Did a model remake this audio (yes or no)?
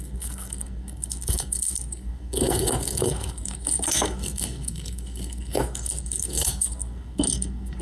yes